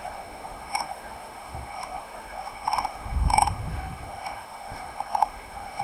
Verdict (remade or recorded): remade